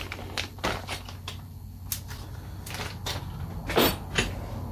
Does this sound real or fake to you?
real